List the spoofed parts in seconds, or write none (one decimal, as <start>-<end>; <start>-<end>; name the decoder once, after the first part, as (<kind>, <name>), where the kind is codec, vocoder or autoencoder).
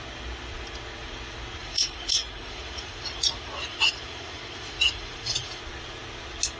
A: 1.6-5.6 (vocoder, Vocos)